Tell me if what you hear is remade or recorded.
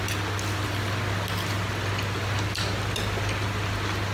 recorded